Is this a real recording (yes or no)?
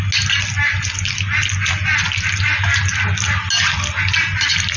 yes